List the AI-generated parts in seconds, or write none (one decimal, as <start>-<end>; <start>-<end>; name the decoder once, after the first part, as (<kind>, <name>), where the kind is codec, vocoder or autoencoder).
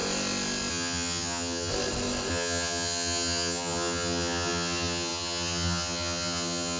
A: 0.7-1.7 (vocoder, HiFi-GAN); 2.3-6.8